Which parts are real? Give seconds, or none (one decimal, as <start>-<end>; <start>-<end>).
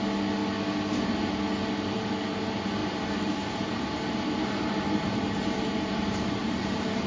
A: 0.0-2.8